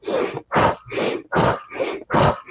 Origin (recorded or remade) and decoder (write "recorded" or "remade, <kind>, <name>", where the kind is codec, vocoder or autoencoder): recorded